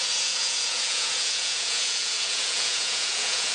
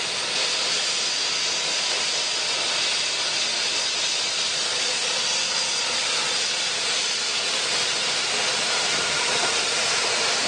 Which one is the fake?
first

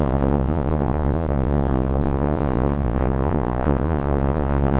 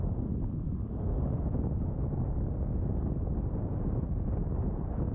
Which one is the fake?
first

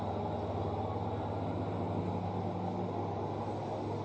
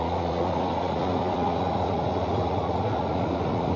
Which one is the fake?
second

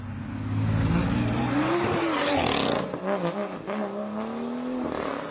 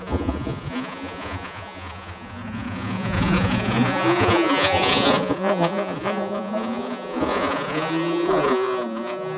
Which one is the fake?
second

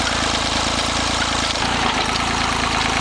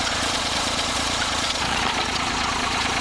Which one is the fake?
second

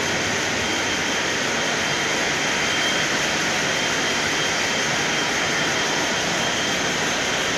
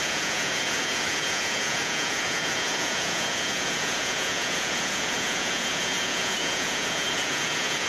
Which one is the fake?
second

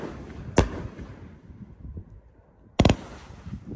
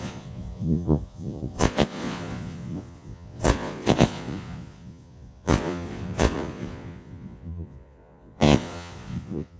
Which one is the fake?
second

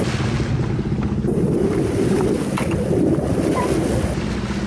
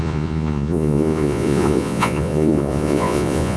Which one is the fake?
second